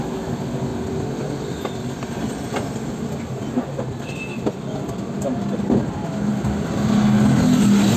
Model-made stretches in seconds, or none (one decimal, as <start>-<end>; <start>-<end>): 0.7-2.9